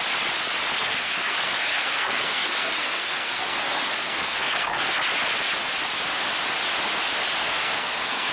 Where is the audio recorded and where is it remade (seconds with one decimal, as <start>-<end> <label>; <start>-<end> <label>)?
0.0-0.8 recorded; 0.8-4.9 remade; 4.9-7.4 recorded; 7.4-8.3 remade